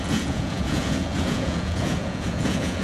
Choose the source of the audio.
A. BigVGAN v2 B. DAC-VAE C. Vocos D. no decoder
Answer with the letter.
C